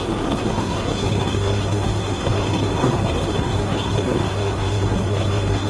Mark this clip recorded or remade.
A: remade